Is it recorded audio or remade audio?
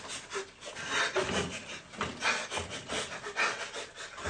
recorded